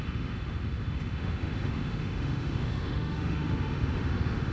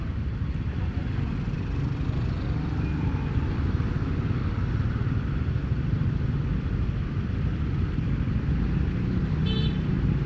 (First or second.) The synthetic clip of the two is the first